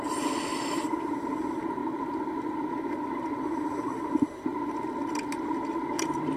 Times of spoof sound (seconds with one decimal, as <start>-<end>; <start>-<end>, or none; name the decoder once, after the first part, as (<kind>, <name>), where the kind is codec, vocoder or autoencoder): 0.0-1.8 (vocoder, BigVGAN v2); 2.3-4.5